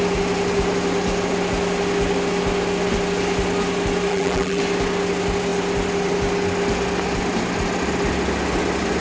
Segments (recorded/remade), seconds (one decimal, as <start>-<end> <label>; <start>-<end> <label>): 0.0-4.1 recorded; 4.1-4.6 remade; 4.6-9.0 recorded